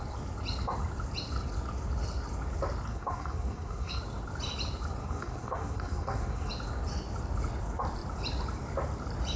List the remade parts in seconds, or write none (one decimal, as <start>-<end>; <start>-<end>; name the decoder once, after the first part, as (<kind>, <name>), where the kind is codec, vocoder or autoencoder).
2.9-4.0 (codec, SNAC); 5.0-6.5